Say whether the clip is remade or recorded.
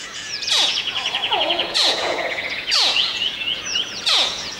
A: remade